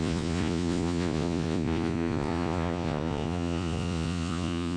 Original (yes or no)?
no